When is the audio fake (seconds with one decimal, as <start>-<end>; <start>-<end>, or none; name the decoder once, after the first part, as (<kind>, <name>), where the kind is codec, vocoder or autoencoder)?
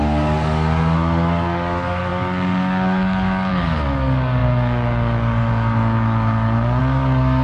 0.0-7.4 (codec, DAC)